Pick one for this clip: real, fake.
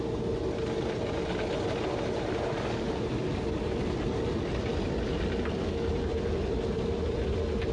real